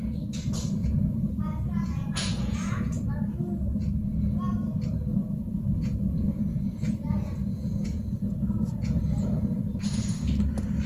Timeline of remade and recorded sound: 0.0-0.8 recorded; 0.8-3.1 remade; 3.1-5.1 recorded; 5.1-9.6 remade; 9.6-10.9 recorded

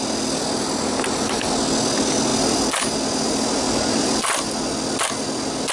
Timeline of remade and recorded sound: 0.0-5.7 recorded

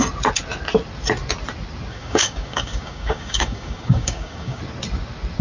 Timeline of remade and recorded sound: 0.0-1.9 recorded; 1.9-4.6 remade; 4.6-5.4 recorded